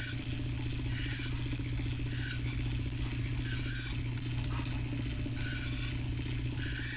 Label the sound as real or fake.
real